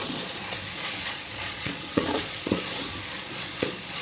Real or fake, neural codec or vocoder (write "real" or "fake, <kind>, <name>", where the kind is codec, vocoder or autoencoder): fake, vocoder, Vocos